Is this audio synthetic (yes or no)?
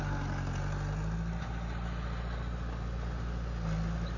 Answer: no